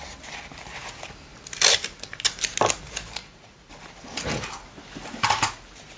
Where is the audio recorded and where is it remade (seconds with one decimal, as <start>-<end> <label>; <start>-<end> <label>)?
0.0-3.2 recorded; 3.2-3.7 remade; 3.7-6.0 recorded